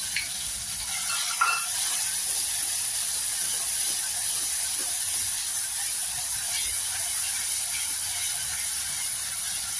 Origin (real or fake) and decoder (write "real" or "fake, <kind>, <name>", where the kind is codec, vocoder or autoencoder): real